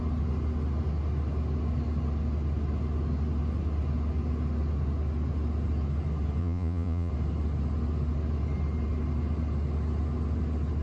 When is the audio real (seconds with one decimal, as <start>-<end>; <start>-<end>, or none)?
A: 0.0-6.4; 7.1-10.8